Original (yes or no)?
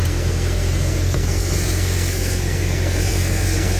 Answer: no